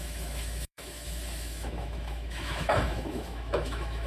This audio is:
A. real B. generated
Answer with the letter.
B